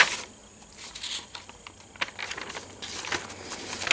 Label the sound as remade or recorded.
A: recorded